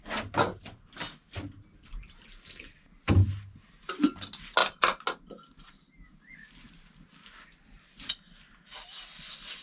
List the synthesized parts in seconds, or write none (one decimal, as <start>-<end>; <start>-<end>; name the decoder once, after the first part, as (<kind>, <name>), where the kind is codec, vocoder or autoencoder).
none